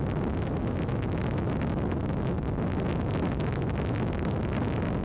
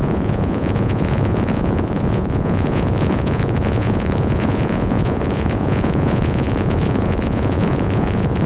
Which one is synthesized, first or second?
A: second